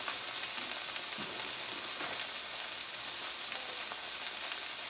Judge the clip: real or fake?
real